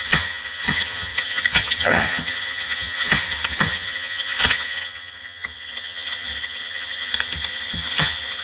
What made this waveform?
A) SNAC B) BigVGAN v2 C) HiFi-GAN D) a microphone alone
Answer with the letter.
C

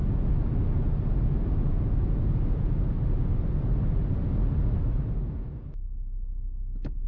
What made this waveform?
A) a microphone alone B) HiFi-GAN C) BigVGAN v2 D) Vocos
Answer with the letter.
A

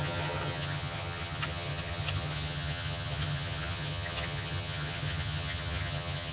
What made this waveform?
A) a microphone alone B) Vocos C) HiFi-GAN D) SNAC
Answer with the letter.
C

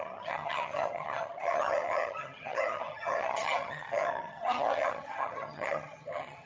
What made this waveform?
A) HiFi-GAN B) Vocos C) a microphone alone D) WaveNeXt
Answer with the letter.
A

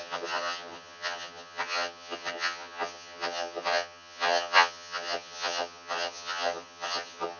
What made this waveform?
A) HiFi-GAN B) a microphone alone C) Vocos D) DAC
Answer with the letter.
A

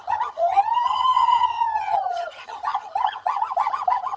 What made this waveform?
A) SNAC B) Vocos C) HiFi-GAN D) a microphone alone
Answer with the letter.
C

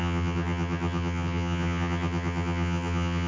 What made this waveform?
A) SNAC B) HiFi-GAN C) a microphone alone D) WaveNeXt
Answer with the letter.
B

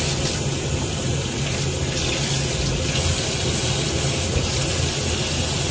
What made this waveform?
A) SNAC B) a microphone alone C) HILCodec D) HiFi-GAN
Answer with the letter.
B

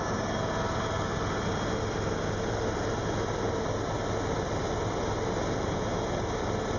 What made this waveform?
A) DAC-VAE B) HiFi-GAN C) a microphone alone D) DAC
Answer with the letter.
C